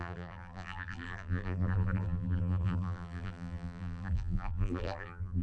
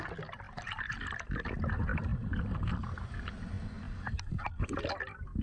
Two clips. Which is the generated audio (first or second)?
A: first